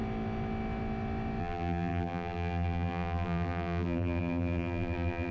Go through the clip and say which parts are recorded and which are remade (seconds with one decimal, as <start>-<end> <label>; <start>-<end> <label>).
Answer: 0.0-1.4 recorded; 1.4-5.3 remade